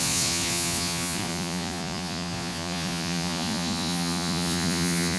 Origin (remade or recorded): remade